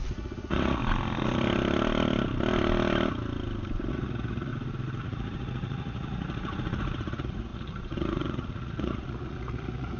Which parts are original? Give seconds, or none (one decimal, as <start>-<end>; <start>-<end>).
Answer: 0.8-3.9; 4.5-5.0

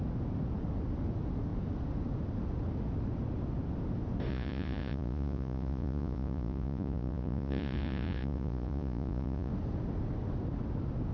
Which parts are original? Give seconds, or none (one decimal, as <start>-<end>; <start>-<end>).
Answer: 0.0-4.3; 9.5-11.1

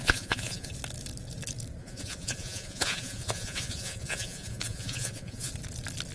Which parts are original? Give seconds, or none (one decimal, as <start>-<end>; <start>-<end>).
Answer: 0.7-1.8; 5.5-6.1

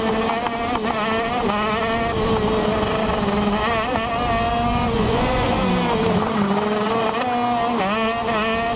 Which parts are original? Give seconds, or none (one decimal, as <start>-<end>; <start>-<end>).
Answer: 0.0-4.7; 5.7-8.8

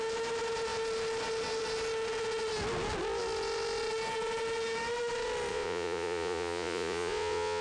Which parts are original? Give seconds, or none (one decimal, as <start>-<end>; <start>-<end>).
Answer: 0.0-5.5

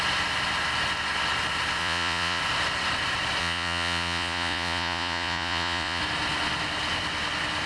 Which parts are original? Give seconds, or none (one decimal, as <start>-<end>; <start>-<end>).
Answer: 0.0-1.8; 2.4-3.4; 6.0-7.7

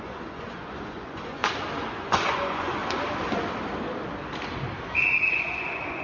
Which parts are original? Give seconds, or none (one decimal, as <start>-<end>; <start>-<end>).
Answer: 1.4-1.9; 2.8-5.3